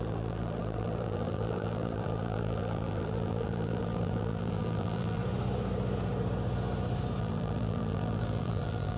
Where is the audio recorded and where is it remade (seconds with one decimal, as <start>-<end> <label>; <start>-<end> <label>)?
0.0-5.2 remade; 5.2-7.2 recorded; 7.2-9.0 remade